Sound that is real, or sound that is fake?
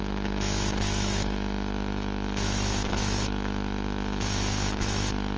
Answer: fake